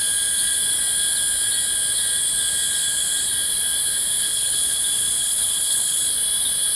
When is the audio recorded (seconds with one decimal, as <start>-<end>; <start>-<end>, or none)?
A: 0.0-4.2; 4.8-5.2; 6.0-6.8